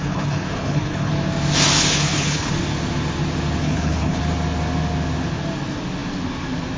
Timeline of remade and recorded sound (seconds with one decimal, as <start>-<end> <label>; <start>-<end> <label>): 0.0-1.1 remade; 1.1-1.9 recorded; 1.9-2.5 remade; 2.5-3.6 recorded; 3.6-4.2 remade; 4.2-6.8 recorded

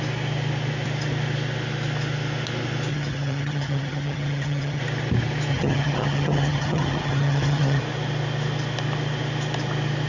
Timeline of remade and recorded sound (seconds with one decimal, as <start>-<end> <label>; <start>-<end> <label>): 0.0-2.9 recorded; 2.9-4.8 remade; 4.8-5.5 recorded; 5.5-7.8 remade; 7.8-10.1 recorded

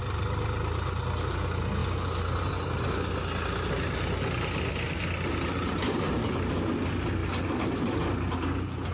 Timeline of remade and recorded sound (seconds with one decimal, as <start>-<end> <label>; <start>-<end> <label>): 0.0-8.9 recorded

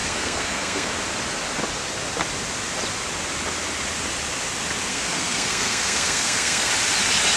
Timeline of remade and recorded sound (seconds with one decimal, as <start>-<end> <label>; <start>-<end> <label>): 0.0-0.9 remade; 0.9-4.9 recorded; 4.9-6.7 remade; 6.7-7.4 recorded

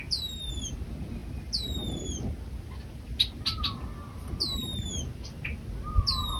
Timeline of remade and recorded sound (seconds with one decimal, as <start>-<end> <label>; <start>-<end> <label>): 0.0-6.4 recorded

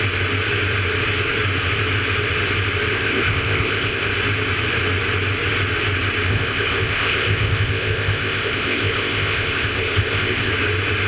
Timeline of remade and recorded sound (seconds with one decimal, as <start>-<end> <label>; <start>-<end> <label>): 0.0-2.9 recorded; 2.9-4.1 remade; 4.1-6.3 recorded; 6.3-10.5 remade; 10.5-11.1 recorded

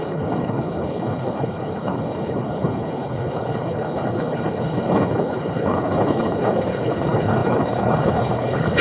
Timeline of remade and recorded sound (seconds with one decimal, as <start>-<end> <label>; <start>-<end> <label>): 0.0-8.8 remade